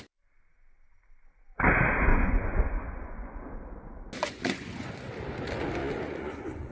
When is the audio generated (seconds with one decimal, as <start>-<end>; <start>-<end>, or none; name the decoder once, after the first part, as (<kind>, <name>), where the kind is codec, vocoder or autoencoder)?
2.1-3.4 (vocoder, Vocos); 4.2-5.1; 5.8-6.7